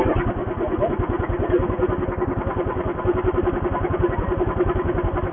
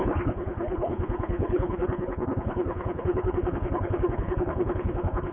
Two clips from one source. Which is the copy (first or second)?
second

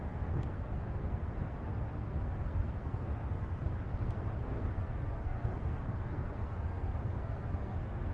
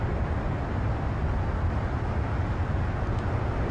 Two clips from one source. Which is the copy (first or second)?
first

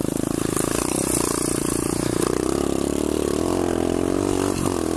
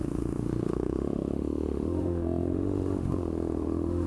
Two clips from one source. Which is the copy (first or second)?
second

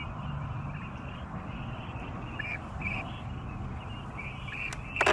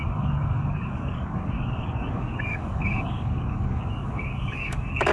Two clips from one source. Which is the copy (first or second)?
second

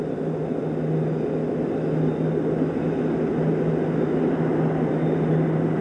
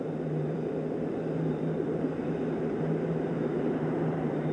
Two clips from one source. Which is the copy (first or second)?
second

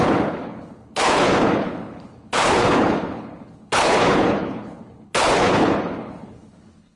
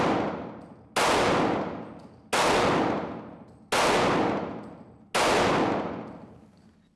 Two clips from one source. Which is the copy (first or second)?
first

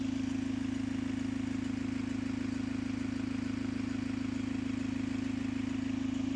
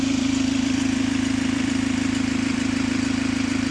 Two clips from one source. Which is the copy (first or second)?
second